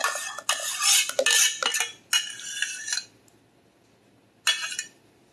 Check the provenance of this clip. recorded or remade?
recorded